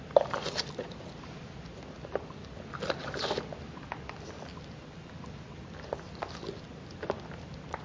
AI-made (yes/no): no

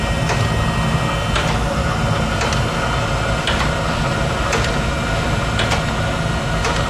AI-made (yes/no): no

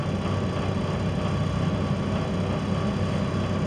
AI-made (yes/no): no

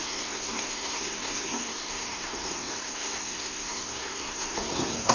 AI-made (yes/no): yes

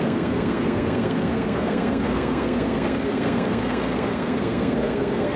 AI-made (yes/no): yes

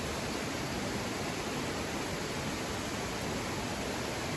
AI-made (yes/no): no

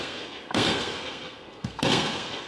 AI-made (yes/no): yes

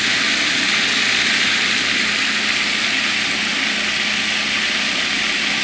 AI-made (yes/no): no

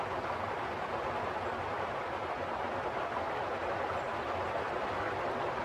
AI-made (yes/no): no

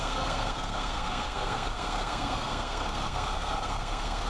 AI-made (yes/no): yes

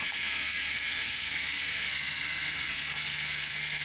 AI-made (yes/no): yes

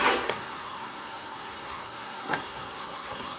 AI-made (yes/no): yes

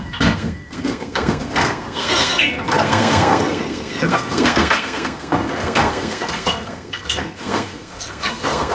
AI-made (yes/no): yes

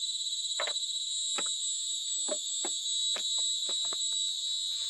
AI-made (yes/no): no